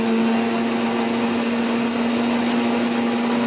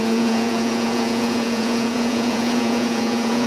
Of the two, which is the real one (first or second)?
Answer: first